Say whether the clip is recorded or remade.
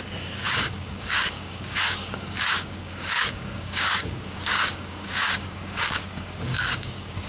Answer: remade